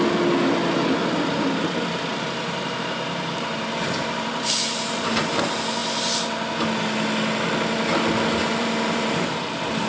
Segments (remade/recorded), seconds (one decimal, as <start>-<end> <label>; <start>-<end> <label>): 0.0-2.1 recorded; 2.1-5.3 remade; 5.3-8.4 recorded; 8.4-9.9 remade